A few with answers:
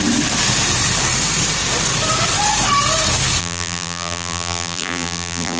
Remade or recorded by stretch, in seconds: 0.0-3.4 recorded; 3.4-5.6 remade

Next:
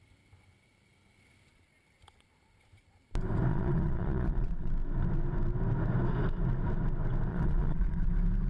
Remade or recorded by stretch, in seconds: 0.0-3.5 recorded; 3.5-4.7 remade; 4.7-7.3 recorded; 7.3-8.1 remade; 8.1-8.5 recorded